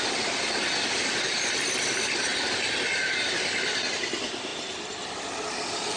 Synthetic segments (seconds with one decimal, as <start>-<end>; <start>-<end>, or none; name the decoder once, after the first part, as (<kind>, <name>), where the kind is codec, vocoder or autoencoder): none